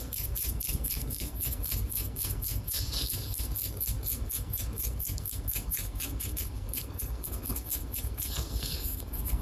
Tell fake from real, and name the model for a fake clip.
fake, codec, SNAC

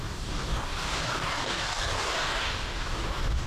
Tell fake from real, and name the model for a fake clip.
fake, codec, DAC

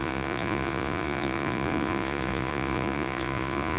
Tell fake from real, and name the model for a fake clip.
fake, vocoder, Vocos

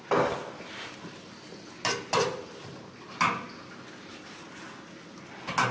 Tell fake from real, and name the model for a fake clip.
real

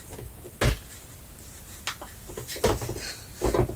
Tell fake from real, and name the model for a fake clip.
real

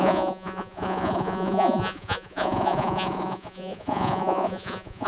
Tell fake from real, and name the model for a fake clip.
fake, vocoder, Vocos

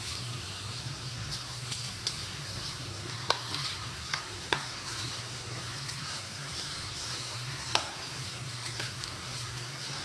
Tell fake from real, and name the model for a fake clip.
fake, codec, SNAC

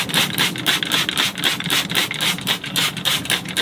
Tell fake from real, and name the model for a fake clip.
real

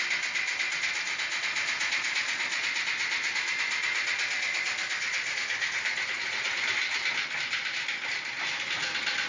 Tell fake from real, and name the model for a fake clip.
real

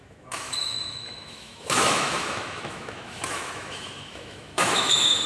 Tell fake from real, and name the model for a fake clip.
fake, autoencoder, DAC-VAE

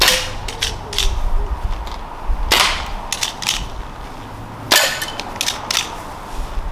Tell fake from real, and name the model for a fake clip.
real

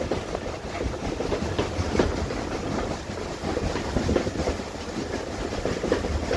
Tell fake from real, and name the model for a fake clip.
real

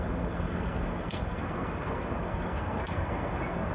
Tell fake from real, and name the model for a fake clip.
fake, codec, SNAC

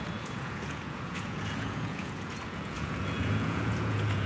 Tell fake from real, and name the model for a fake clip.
fake, vocoder, Vocos